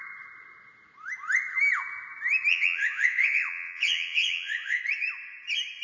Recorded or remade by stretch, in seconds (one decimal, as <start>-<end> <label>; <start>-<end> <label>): 0.0-2.5 recorded; 2.5-4.8 remade; 4.8-5.8 recorded